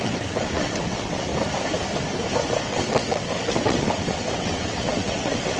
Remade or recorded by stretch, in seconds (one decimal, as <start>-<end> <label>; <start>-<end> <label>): 0.0-1.3 remade; 1.3-2.5 recorded; 2.5-5.6 remade